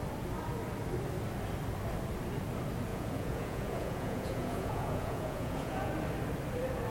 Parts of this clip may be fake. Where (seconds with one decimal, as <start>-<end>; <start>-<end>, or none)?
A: 2.9-5.9